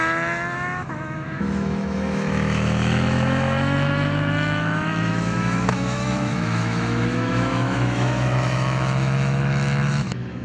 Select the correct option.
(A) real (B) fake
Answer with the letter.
B